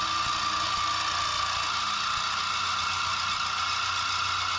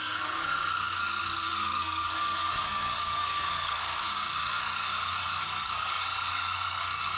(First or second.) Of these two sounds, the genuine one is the first